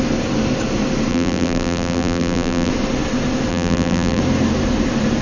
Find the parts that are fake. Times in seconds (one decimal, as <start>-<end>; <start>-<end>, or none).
1.1-2.7; 3.5-4.2